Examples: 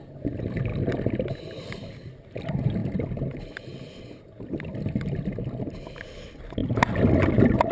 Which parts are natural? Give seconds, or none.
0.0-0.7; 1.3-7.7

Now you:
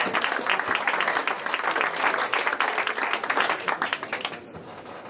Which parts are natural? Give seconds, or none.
0.0-5.1

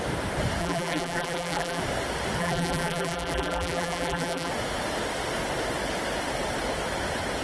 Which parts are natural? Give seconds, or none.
0.0-0.6; 1.8-2.4; 4.5-7.4

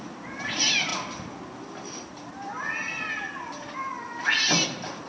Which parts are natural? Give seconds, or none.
0.0-5.1

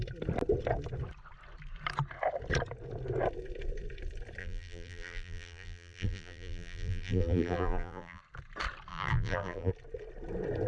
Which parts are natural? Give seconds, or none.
0.0-4.4; 8.2-8.9; 9.7-10.7

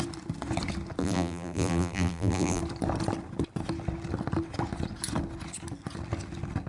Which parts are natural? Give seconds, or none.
0.0-1.0; 2.6-6.7